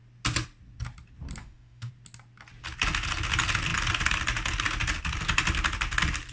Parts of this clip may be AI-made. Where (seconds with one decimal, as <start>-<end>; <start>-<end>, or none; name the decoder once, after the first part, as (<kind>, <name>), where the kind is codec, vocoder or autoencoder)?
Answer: 1.4-1.9 (autoencoder, DAC-VAE)